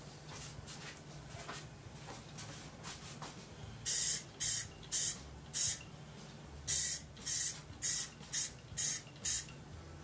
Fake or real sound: real